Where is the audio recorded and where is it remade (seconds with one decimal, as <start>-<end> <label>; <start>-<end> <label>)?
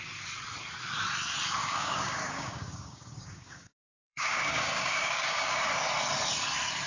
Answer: 0.0-1.6 recorded; 1.6-5.7 remade; 5.7-6.9 recorded